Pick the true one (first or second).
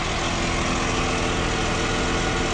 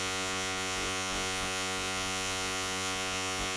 first